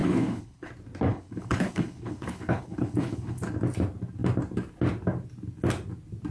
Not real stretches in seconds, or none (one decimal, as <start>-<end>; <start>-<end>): 0.0-0.7; 1.1-3.4